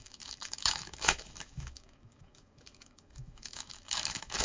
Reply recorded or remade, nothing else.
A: remade